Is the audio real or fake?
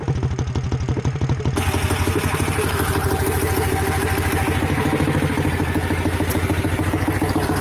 real